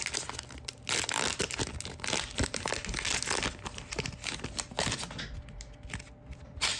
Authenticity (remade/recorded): recorded